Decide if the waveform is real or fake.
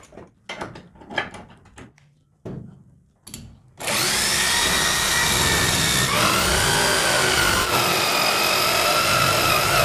real